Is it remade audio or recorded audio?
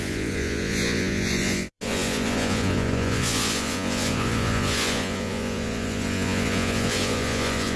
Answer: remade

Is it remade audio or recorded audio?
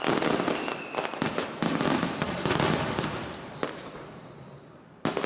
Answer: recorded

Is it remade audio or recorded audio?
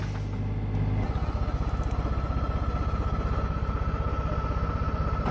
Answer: recorded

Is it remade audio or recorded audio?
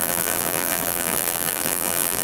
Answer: remade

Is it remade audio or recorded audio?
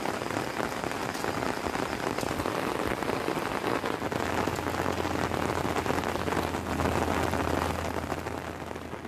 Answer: recorded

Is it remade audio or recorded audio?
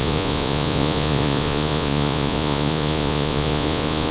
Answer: remade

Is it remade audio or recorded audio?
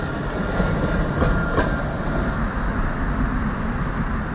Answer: recorded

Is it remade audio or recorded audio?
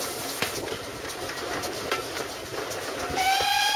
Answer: recorded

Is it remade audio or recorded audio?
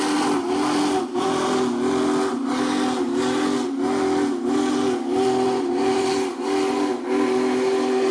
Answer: recorded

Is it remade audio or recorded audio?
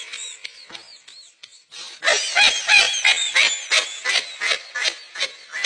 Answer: recorded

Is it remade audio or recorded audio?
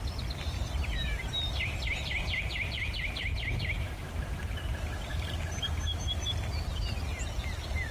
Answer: recorded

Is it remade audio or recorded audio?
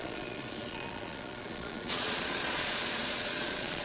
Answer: remade